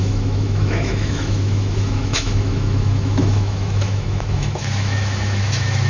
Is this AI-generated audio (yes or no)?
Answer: yes